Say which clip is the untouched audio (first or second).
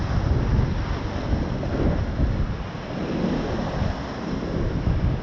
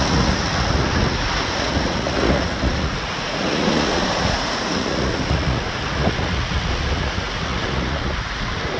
first